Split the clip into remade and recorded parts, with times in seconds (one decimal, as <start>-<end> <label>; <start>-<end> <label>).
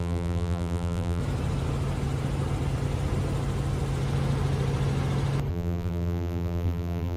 0.0-1.2 remade; 1.2-5.5 recorded; 5.5-7.2 remade